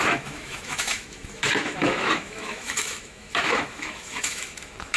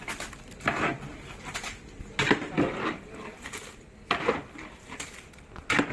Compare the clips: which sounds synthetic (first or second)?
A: first